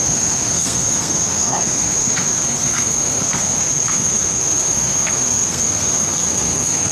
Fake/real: fake